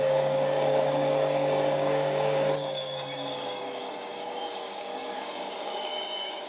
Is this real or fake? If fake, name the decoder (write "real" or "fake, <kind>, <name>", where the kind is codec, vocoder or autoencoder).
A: fake, codec, DAC